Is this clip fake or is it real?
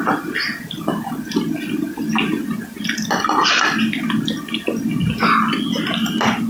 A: real